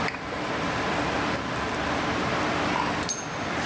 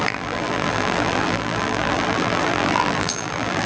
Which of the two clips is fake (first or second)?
second